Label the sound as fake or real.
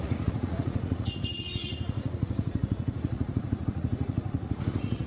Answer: fake